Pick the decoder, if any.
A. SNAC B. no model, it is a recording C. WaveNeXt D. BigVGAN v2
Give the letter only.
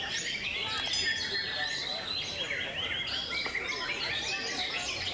B